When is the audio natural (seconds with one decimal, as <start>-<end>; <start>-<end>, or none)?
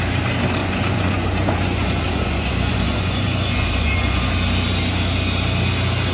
0.0-0.6; 4.3-6.1